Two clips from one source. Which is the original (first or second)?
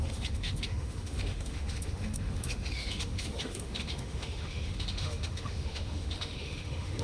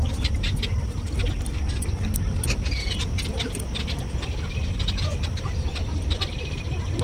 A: second